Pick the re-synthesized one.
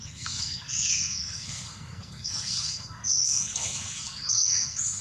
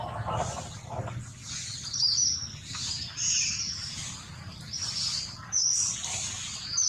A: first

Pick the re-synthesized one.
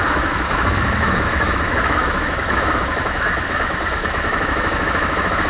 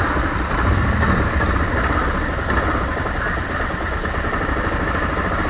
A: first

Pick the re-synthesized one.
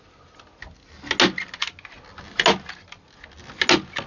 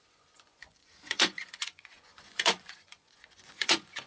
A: second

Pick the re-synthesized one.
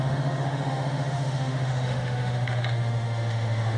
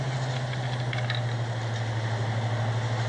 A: first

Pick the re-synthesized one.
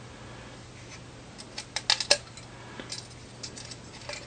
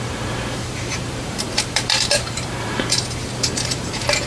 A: second